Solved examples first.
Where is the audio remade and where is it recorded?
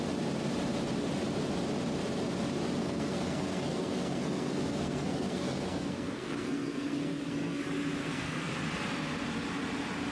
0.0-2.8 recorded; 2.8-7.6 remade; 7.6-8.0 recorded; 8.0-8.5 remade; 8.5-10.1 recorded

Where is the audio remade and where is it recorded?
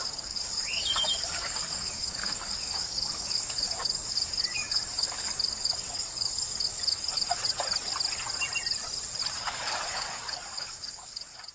0.0-7.4 remade; 7.4-9.4 recorded; 9.4-11.5 remade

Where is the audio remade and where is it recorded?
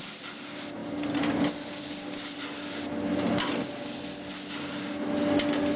0.0-5.8 recorded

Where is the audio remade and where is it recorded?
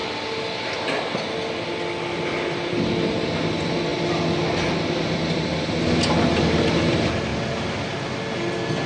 0.0-8.9 recorded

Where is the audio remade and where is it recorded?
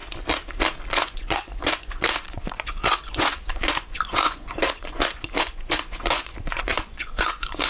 0.0-0.9 recorded; 0.9-7.7 remade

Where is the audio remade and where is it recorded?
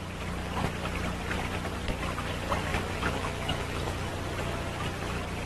0.0-2.7 recorded; 2.7-4.1 remade; 4.1-5.5 recorded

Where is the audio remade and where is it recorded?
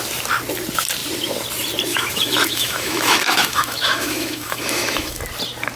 0.0-1.9 recorded; 1.9-5.2 remade; 5.2-5.8 recorded